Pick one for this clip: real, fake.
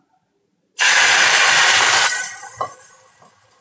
real